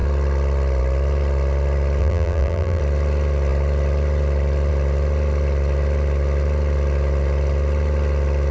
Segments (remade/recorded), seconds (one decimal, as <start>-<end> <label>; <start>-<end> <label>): 0.0-2.0 recorded; 2.0-2.8 remade; 2.8-8.5 recorded